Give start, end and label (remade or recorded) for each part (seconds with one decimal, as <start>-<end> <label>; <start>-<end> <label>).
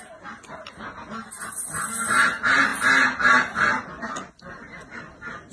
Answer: 0.0-5.5 recorded